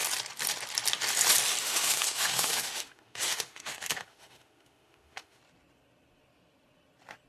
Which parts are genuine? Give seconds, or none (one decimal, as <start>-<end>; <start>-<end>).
0.0-1.6; 5.4-7.3